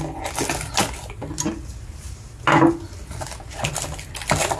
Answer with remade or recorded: recorded